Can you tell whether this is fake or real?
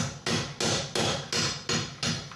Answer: real